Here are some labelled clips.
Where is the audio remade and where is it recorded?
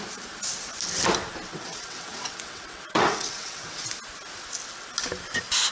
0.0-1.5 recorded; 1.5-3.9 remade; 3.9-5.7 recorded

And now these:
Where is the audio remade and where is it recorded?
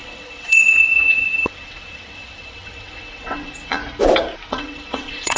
0.0-3.8 remade; 3.8-4.5 recorded; 4.5-5.4 remade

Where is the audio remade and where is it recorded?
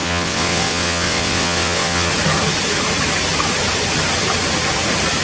0.0-2.1 remade; 2.1-5.2 recorded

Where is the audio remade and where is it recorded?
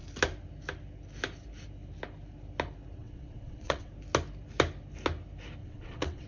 0.0-3.0 recorded; 3.0-3.9 remade; 3.9-5.6 recorded; 5.6-6.3 remade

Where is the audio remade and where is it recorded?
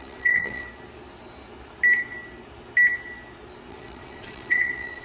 0.0-0.7 remade; 0.7-3.7 recorded; 3.7-5.0 remade